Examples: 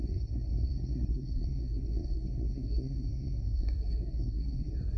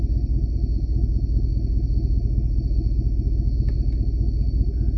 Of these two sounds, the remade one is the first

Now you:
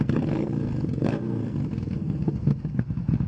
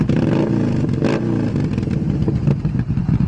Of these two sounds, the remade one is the first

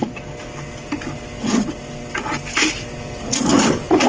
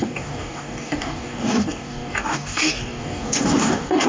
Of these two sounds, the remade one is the second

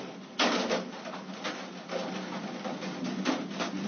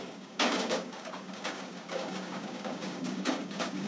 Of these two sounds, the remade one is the second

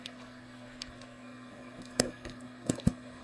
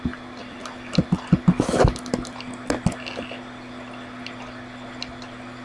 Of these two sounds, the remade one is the first